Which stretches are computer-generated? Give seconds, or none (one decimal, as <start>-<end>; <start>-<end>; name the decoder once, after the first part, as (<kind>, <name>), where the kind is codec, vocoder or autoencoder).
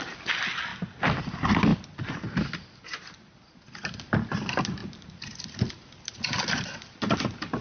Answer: none